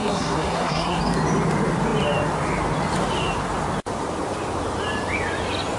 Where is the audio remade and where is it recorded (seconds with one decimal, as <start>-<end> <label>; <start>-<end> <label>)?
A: 0.0-1.0 remade; 1.0-5.8 recorded